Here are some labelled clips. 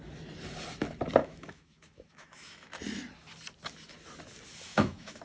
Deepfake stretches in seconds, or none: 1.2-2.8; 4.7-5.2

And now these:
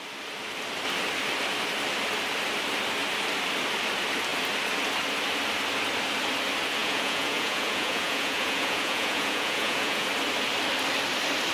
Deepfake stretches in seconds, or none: 6.8-10.1

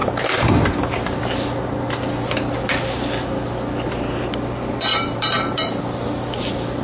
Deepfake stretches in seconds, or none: 0.0-1.2; 4.9-5.8

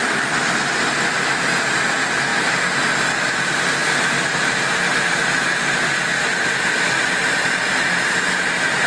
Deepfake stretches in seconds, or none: none